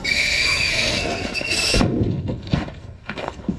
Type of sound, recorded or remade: remade